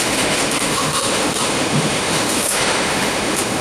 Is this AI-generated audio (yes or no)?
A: yes